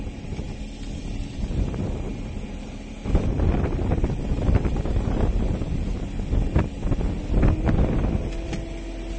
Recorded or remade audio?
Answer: recorded